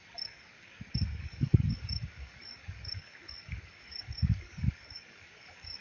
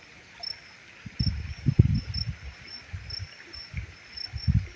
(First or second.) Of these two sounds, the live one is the second